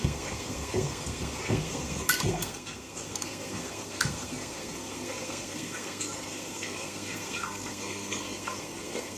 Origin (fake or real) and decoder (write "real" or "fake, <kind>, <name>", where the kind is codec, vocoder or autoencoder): fake, codec, SNAC